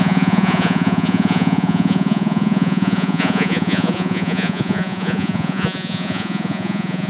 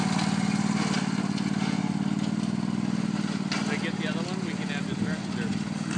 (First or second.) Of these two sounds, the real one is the second